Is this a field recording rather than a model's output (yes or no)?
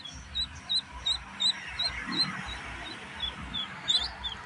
yes